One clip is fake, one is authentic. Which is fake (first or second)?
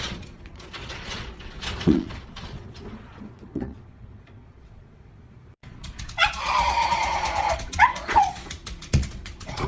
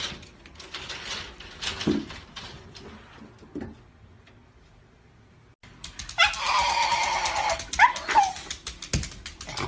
first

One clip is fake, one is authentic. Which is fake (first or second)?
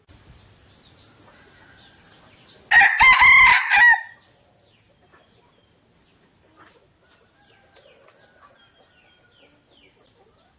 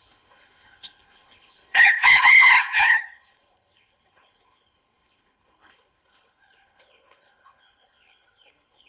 second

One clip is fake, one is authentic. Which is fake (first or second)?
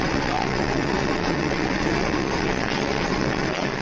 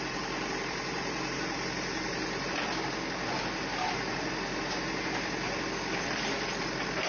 first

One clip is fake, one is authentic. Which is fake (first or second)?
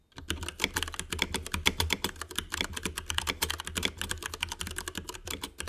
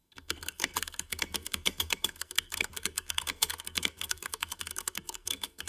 second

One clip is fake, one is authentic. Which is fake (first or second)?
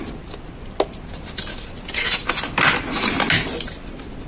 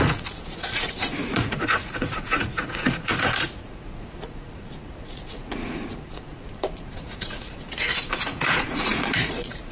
second